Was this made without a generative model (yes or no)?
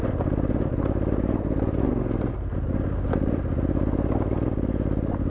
yes